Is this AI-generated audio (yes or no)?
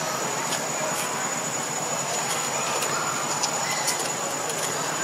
no